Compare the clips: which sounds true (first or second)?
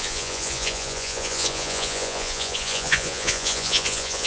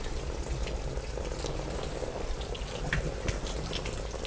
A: second